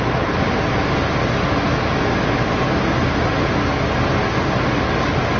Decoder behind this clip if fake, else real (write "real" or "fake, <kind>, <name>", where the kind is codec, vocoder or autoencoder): real